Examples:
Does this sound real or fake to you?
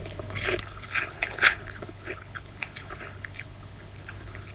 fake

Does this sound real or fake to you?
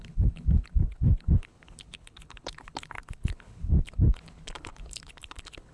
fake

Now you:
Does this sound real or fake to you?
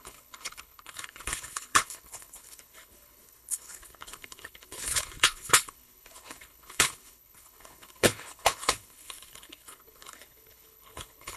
fake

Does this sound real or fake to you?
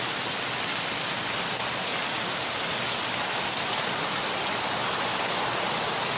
real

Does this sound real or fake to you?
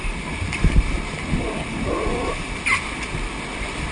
real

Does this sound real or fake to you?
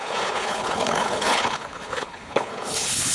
fake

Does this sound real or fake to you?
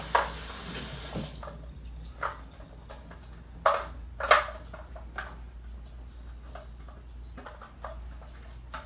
real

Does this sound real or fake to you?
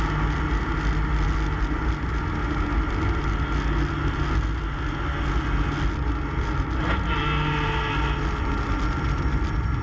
real